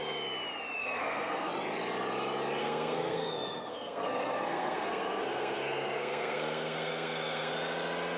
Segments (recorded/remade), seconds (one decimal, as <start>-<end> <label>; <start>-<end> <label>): 0.0-0.8 recorded; 0.8-1.5 remade; 1.5-2.6 recorded; 2.6-7.5 remade; 7.5-8.2 recorded